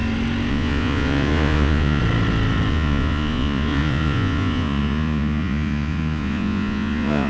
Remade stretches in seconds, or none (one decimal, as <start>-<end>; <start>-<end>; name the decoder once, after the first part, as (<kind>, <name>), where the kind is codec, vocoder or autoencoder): 0.5-2.0 (vocoder, Vocos); 2.7-7.3